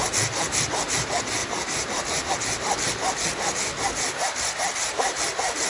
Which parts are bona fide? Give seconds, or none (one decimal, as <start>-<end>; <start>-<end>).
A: 0.0-5.7